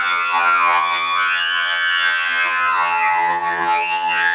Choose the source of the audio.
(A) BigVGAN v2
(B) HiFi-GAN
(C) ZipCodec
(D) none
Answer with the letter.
B